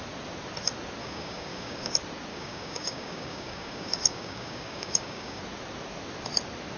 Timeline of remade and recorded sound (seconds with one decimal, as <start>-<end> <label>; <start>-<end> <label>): 0.0-1.0 recorded; 1.0-1.9 remade; 1.9-2.3 recorded; 2.3-5.4 remade; 5.4-6.8 recorded